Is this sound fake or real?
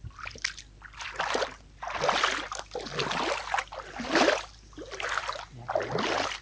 real